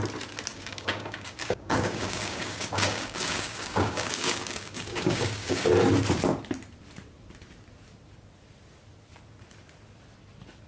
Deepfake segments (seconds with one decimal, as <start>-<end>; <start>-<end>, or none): 0.5-5.7